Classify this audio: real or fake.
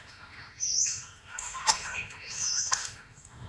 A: fake